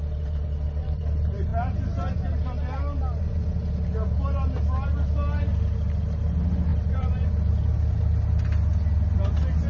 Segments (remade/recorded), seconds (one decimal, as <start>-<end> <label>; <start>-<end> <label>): 0.0-6.7 recorded; 6.7-7.3 remade; 7.3-9.7 recorded

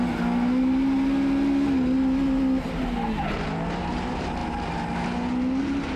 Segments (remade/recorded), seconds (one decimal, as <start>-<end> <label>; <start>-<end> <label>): 0.0-6.0 recorded